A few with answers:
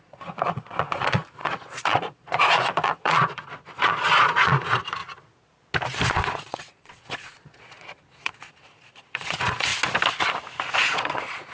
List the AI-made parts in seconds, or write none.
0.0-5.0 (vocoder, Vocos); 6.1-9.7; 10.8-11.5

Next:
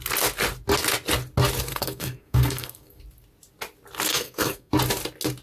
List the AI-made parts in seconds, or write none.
1.7-3.0 (codec, SNAC); 4.1-4.7

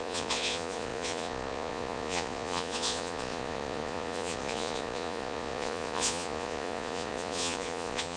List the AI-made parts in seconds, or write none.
0.0-8.2 (vocoder, Vocos)

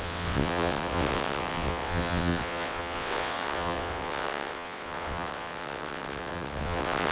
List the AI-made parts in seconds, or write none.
0.0-7.1 (vocoder, WaveNeXt)

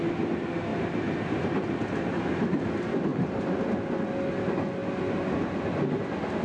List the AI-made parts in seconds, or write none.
0.7-2.7 (vocoder, BigVGAN v2); 3.1-3.6

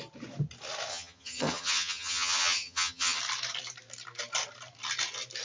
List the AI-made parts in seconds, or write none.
0.9-3.2 (vocoder, HiFi-GAN)

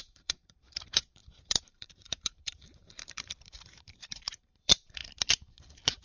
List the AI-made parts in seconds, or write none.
0.0-5.0 (vocoder, BigVGAN v2)